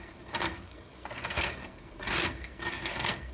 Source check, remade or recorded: remade